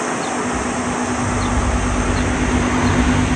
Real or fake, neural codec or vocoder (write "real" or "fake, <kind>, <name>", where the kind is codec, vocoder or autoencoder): real